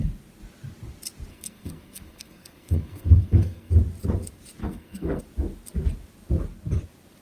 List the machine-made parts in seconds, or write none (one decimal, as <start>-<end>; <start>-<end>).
1.3-3.7; 4.6-5.2